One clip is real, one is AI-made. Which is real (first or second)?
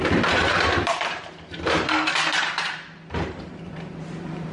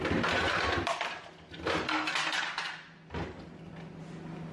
second